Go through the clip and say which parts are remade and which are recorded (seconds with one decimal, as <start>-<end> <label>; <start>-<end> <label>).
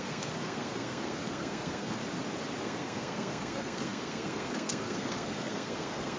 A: 0.0-2.0 remade; 2.0-2.6 recorded; 2.6-6.2 remade